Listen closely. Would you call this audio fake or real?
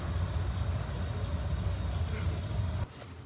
real